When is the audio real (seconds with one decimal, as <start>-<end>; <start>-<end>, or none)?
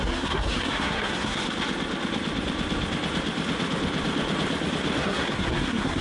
1.4-5.0